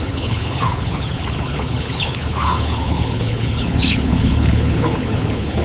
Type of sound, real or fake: fake